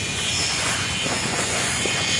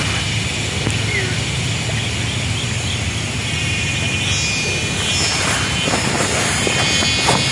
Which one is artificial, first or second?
first